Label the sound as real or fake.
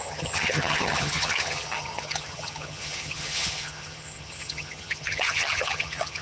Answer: fake